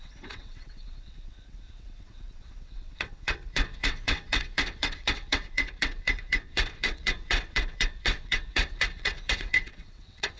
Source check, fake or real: fake